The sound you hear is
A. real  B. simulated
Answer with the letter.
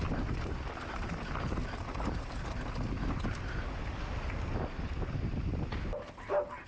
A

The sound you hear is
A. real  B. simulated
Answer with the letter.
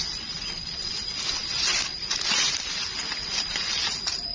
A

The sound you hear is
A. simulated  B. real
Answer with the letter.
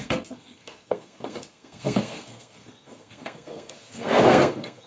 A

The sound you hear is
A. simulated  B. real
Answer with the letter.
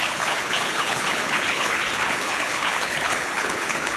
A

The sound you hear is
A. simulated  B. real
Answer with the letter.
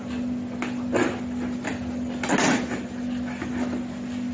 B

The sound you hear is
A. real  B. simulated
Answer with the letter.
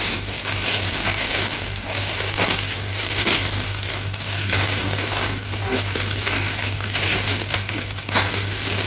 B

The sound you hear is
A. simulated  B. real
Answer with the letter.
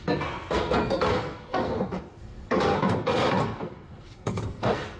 A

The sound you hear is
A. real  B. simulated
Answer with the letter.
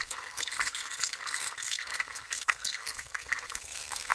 B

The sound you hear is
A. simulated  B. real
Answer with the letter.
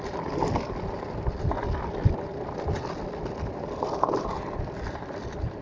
B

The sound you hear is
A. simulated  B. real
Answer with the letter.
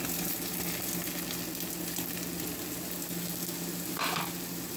B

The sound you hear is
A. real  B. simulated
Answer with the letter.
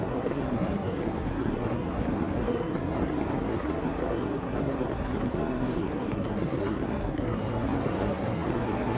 B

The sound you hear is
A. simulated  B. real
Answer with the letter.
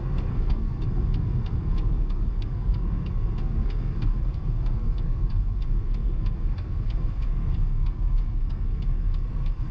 A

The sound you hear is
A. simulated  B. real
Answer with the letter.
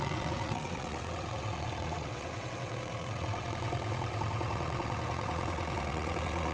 A